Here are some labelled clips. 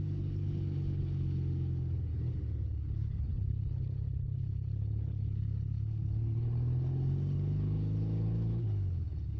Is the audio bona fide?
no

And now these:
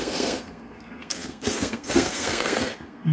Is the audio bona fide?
no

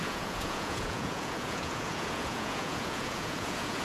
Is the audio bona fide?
no